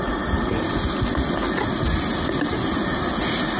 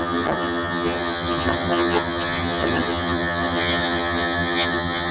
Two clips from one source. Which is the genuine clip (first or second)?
first